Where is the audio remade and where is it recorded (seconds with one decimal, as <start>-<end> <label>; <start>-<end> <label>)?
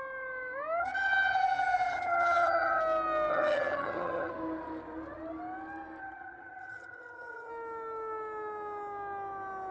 0.0-0.8 recorded; 0.8-2.8 remade; 2.8-3.3 recorded; 3.3-4.3 remade; 4.3-6.0 recorded; 6.0-7.5 remade; 7.5-9.7 recorded